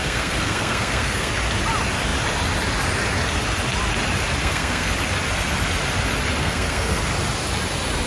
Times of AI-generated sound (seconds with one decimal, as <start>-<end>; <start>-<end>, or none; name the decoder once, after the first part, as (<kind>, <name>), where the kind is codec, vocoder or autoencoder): 0.0-1.3 (codec, SNAC); 4.4-4.9; 6.4-7.0